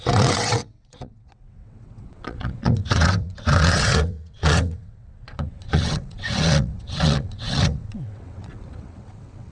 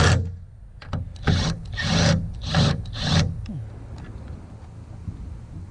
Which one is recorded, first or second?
second